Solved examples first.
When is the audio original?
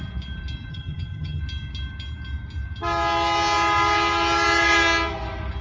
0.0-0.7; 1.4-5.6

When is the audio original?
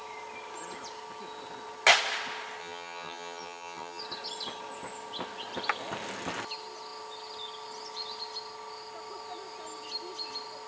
0.0-2.6; 4.0-10.7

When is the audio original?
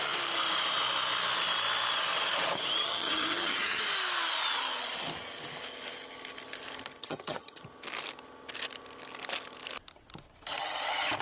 0.0-2.8; 3.8-7.0; 7.6-11.2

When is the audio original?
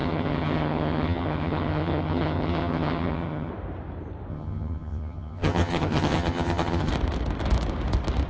3.5-4.3; 6.9-8.3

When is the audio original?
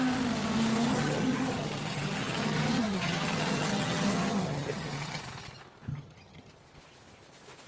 0.0-0.9; 5.2-5.9; 6.5-7.7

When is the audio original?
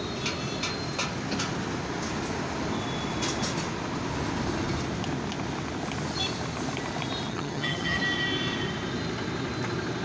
0.0-7.3; 8.0-10.0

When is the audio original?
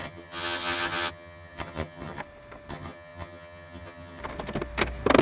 2.2-2.7; 4.2-5.2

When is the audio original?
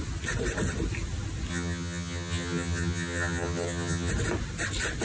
0.0-1.5; 4.1-5.0